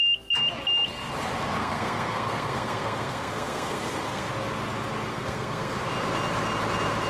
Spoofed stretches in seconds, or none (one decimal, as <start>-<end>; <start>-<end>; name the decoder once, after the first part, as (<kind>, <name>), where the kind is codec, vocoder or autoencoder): 1.6-4.3 (codec, SNAC); 5.1-5.8